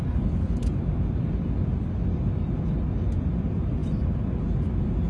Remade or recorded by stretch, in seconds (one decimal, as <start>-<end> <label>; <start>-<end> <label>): 0.0-5.1 recorded